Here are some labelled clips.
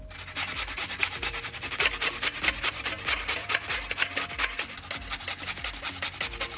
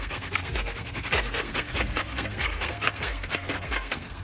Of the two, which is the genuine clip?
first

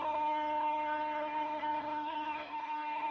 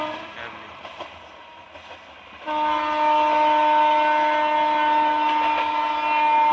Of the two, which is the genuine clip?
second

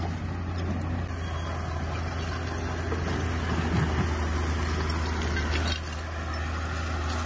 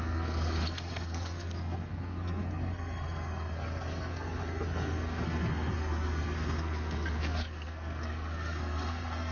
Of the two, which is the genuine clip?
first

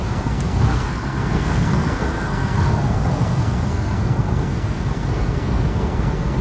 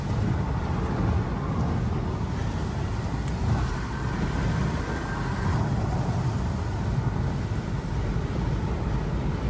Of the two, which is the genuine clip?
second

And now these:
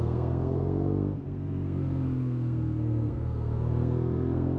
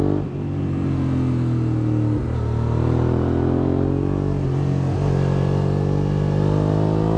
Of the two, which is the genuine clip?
second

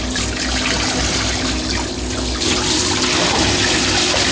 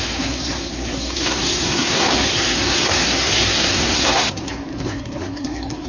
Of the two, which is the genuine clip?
first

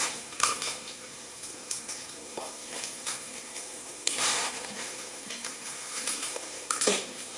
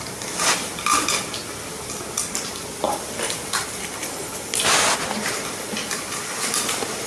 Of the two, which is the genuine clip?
second